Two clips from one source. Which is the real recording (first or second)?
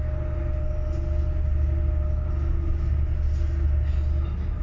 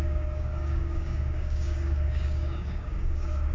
first